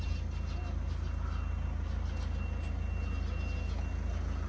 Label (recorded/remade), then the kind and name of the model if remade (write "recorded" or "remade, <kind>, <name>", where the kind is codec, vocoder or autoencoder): recorded